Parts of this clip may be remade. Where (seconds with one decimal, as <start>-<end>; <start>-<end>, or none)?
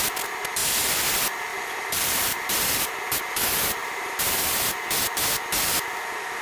1.5-2.9; 3.8-4.5